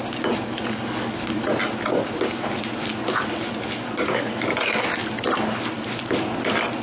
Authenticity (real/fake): real